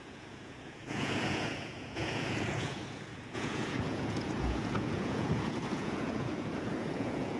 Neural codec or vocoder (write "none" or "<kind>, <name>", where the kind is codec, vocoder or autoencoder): vocoder, Vocos